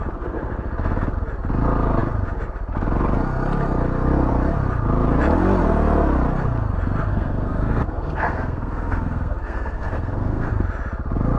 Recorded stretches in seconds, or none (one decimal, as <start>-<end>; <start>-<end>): 0.0-7.1; 10.5-11.4